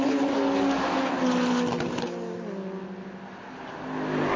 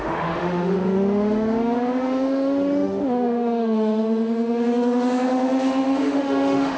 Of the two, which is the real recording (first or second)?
first